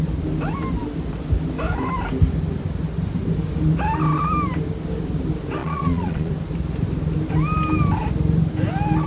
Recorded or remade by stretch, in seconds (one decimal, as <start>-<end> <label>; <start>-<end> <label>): 0.0-5.6 recorded; 5.6-6.3 remade; 6.3-9.1 recorded